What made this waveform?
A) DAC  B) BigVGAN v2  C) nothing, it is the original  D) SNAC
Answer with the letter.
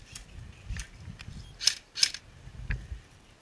C